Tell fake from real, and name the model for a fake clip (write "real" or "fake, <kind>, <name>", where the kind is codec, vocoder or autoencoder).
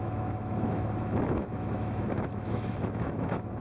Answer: fake, autoencoder, DAC-VAE